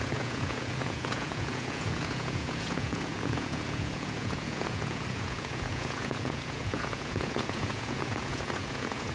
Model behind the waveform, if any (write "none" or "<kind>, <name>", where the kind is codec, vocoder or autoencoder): vocoder, Vocos